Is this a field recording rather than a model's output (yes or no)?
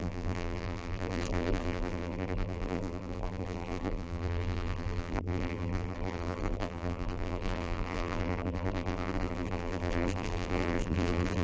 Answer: no